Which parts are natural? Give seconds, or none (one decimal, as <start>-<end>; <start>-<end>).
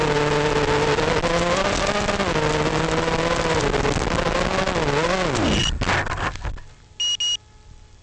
0.0-8.0